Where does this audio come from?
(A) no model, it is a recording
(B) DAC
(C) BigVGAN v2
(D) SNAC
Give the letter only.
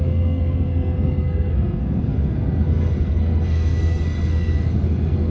D